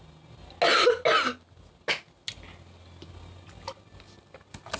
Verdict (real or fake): real